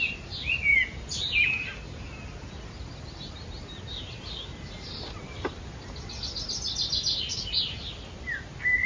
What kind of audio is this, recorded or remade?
recorded